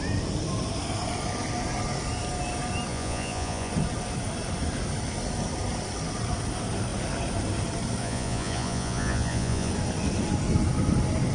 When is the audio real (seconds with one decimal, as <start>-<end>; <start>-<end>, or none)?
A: 0.0-2.9; 3.7-8.0; 9.7-11.3